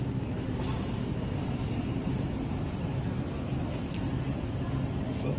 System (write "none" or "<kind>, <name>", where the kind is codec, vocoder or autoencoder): vocoder, BigVGAN v2